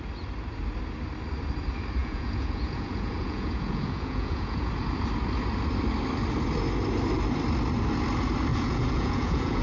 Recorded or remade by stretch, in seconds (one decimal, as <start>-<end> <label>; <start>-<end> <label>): 0.0-2.0 recorded; 2.0-4.7 remade; 4.7-8.5 recorded; 8.5-9.6 remade